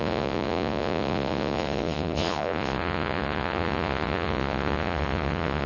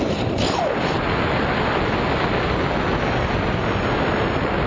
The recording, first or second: second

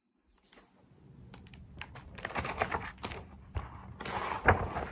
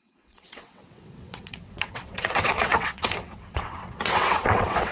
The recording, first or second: first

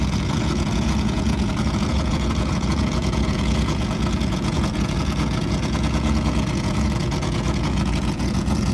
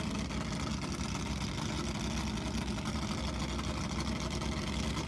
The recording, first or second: second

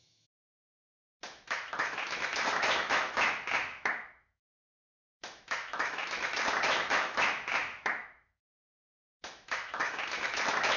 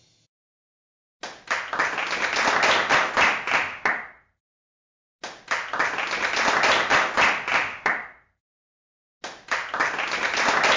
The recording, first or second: second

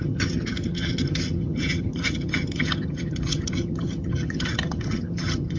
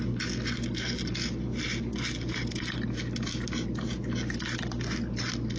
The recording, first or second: second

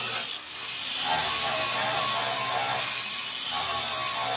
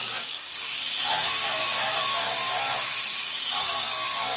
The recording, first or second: first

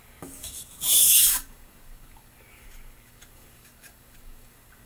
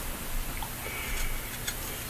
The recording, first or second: second